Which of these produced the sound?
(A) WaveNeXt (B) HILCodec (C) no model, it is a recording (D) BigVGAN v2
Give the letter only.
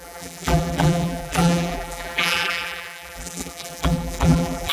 D